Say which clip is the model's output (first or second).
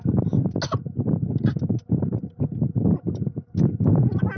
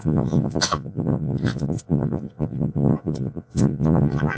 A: second